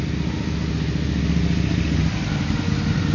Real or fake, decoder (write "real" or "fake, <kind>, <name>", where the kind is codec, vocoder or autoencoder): real